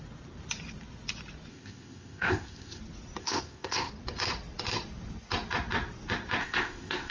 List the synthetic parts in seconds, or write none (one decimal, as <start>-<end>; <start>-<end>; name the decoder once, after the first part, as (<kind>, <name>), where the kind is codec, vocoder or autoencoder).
1.5-2.8 (codec, ZipCodec); 3.2-3.9; 6.4-7.1